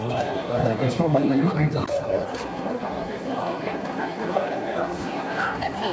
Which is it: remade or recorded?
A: remade